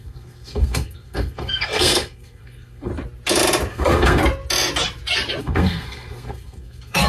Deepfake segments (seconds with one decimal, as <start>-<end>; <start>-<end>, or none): 0.0-2.9; 3.7-4.2; 5.4-7.1